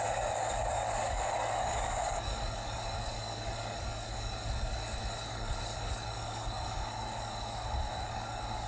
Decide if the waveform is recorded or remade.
remade